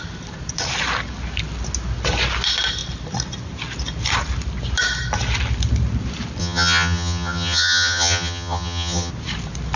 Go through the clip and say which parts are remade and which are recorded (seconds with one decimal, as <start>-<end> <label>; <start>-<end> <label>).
0.0-6.4 recorded; 6.4-9.1 remade; 9.1-9.8 recorded